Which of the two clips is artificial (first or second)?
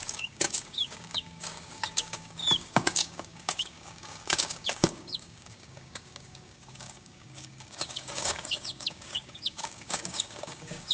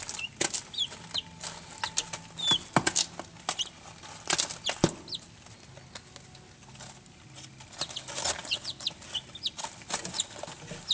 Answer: first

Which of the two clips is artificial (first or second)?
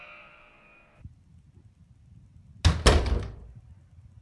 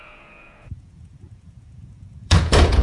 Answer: second